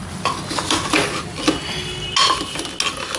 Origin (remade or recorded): recorded